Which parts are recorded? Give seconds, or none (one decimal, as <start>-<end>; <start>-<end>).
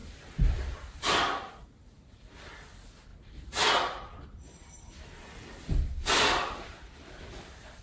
0.0-0.7; 3.1-3.7